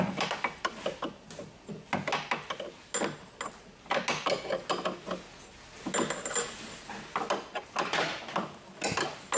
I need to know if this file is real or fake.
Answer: real